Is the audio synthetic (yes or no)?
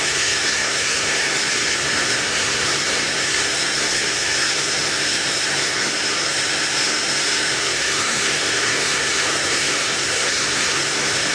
yes